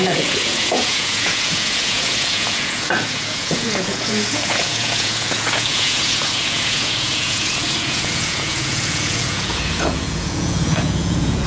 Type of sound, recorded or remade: remade